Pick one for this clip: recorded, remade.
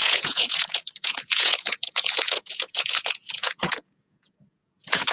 remade